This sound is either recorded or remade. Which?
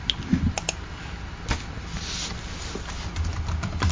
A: recorded